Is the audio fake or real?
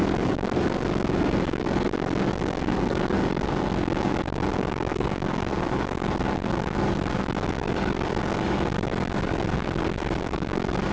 fake